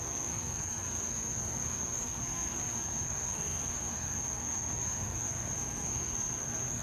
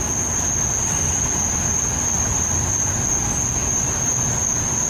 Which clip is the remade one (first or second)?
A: first